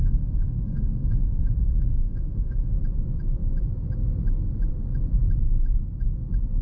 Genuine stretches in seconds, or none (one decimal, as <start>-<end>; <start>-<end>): 2.7-6.6